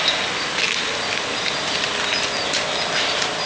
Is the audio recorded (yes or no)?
yes